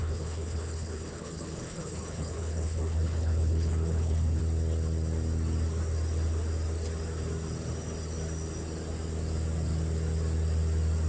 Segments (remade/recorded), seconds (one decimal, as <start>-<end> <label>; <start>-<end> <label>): 0.0-4.4 remade; 4.4-11.1 recorded